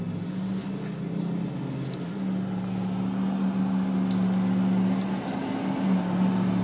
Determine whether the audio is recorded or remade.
recorded